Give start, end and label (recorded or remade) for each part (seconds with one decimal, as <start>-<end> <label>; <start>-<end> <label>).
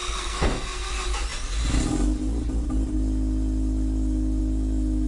0.0-0.9 remade; 0.9-5.1 recorded